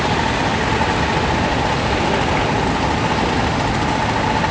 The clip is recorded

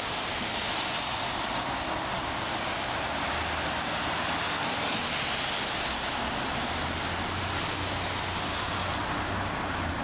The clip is recorded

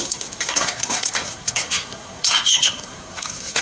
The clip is remade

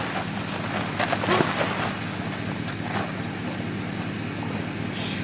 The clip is recorded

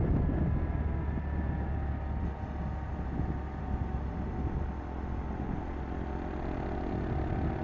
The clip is recorded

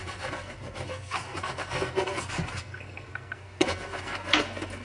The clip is remade